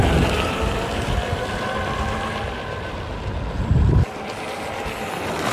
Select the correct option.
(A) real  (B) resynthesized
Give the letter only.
B